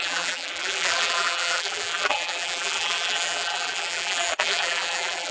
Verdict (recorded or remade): remade